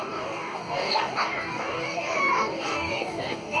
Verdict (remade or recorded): remade